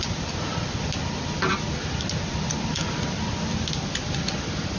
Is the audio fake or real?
real